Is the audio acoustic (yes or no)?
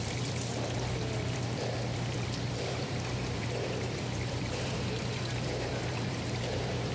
no